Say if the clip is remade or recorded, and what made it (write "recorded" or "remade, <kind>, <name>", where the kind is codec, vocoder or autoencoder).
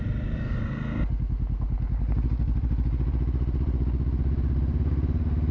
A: recorded